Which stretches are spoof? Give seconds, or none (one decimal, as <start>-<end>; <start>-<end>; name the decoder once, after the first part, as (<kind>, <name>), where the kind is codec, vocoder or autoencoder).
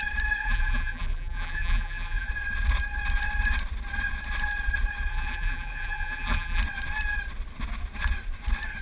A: 0.4-2.3 (vocoder, BigVGAN v2); 5.1-6.6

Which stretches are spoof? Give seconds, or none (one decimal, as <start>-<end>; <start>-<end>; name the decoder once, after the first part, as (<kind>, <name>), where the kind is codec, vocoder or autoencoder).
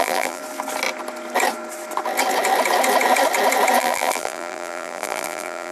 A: 0.0-0.4 (vocoder, BigVGAN v2); 3.8-5.7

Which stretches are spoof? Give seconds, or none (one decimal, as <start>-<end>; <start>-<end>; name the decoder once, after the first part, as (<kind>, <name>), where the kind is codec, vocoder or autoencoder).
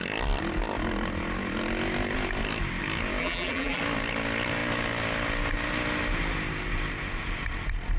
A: 3.2-3.8 (vocoder, BigVGAN v2)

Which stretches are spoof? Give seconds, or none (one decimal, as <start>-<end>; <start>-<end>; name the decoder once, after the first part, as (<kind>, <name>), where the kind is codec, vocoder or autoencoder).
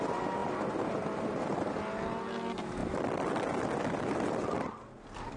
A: none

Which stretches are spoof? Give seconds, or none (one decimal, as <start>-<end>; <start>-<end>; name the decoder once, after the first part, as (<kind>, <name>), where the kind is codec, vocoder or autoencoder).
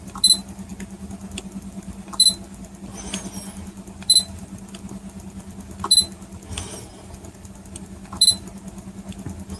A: none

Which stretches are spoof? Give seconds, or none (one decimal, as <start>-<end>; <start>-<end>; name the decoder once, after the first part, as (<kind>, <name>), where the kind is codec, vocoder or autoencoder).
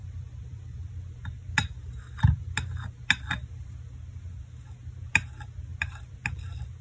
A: 0.0-0.9 (vocoder, BigVGAN v2); 5.7-6.2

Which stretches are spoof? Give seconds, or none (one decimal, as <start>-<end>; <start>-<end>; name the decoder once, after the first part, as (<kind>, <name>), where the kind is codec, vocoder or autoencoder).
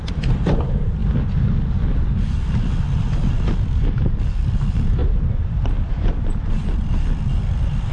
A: 0.0-1.0 (vocoder, BigVGAN v2); 4.3-7.9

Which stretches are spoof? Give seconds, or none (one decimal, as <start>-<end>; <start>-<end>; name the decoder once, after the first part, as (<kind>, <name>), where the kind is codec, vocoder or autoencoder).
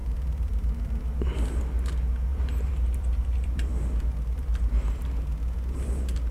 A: 0.0-1.6 (vocoder, BigVGAN v2); 2.3-6.3